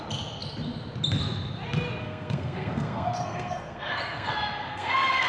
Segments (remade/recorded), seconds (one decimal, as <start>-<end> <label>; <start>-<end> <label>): 0.0-2.0 recorded; 2.0-5.3 remade